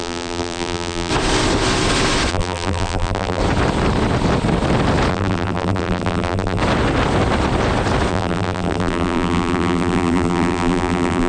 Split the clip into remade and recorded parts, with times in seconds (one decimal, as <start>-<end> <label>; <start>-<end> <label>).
0.0-1.1 remade; 1.1-2.3 recorded; 2.3-3.4 remade; 3.4-5.1 recorded; 5.1-6.6 remade; 6.6-8.1 recorded; 8.1-11.3 remade